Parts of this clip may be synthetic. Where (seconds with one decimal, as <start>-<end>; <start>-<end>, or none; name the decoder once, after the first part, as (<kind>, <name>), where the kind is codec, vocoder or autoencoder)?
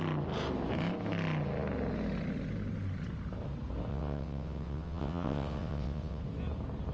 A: 3.9-6.2 (vocoder, WaveNeXt)